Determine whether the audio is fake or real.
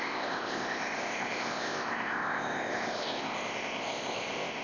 fake